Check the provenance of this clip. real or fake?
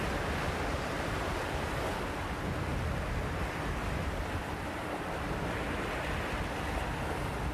real